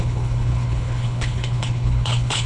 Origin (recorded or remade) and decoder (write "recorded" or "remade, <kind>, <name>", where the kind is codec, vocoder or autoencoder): remade, codec, HILCodec